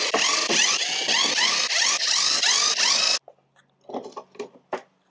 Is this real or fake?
real